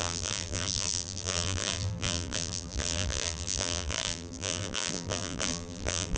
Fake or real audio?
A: fake